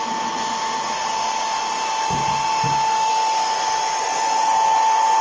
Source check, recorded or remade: recorded